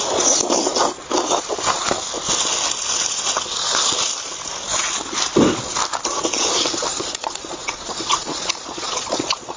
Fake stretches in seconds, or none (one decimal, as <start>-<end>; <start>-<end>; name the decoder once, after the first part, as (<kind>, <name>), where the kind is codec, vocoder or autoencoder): 6.9-9.6 (vocoder, Vocos)